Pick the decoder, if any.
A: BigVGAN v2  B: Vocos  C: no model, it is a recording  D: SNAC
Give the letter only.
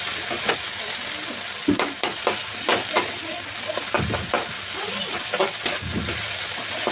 C